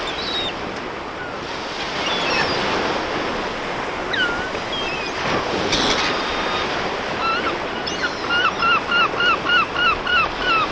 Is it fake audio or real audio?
real